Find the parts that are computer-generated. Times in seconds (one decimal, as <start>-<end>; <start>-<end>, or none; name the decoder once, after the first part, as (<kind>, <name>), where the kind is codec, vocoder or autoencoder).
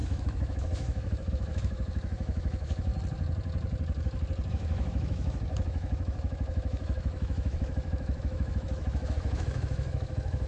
0.0-2.9 (autoencoder, DAC-VAE); 4.5-10.5